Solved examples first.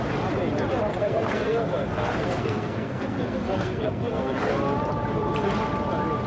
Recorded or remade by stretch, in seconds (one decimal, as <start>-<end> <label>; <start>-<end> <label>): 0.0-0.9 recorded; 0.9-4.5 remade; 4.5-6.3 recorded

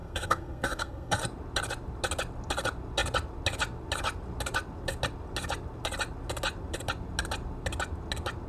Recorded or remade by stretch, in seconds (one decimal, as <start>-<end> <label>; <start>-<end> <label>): 0.0-1.2 remade; 1.2-8.5 recorded

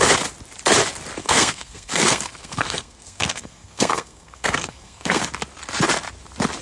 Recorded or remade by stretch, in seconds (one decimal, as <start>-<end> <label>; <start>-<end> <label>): 0.0-1.2 recorded; 1.2-5.2 remade; 5.2-6.6 recorded

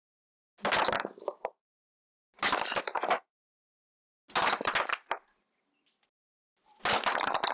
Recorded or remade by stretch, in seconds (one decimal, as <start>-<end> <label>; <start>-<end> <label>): 0.0-7.5 recorded